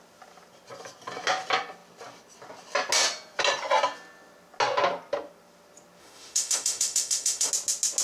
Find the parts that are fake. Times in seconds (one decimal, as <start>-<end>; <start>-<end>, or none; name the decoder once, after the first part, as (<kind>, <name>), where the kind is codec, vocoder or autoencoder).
6.0-7.5 (autoencoder, DAC-VAE)